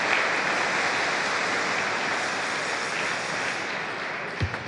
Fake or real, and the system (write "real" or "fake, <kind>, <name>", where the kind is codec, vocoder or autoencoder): real